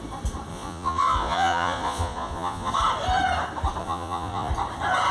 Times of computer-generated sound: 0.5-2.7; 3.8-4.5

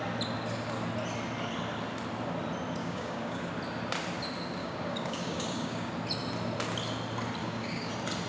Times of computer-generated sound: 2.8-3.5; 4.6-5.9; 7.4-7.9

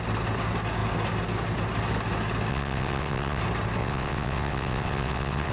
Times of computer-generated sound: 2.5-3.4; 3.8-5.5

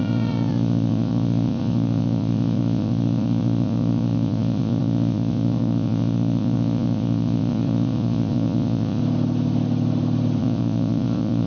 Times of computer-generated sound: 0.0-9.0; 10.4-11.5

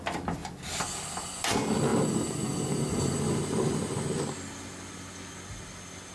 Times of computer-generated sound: none

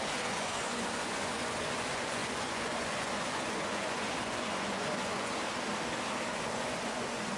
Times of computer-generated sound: 0.0-5.4; 6.3-7.4